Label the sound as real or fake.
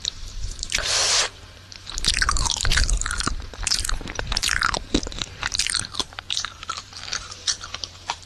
fake